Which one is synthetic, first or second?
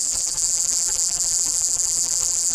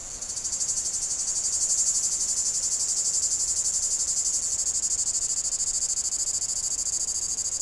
first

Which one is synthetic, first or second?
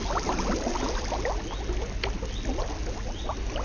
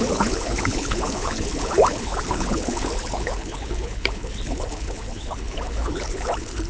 second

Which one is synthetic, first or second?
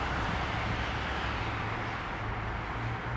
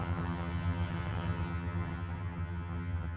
second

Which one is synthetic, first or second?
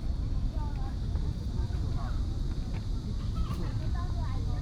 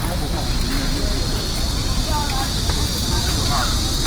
first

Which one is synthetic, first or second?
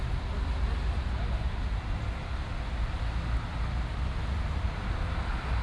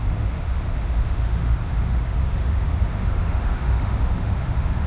second